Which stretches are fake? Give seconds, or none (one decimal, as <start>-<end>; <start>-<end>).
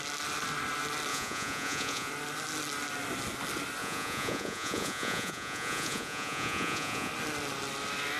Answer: 1.1-2.1; 3.8-7.1